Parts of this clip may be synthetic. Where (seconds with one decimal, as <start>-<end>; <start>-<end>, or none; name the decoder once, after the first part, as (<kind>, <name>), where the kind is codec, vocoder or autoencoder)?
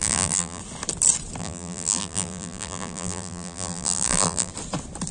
0.0-0.6 (vocoder, BigVGAN v2); 1.4-4.5